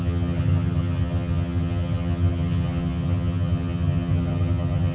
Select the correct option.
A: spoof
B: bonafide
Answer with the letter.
A